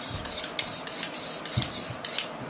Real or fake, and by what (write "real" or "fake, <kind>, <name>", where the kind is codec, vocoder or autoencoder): real